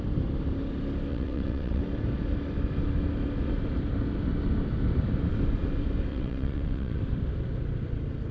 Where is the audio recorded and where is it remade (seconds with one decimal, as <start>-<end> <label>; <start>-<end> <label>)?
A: 0.0-1.1 recorded; 1.1-1.8 remade; 1.8-6.1 recorded; 6.1-7.0 remade; 7.0-8.3 recorded